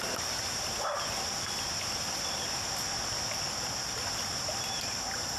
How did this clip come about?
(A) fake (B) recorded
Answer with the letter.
B